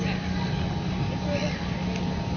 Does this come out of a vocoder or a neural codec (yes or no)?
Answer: no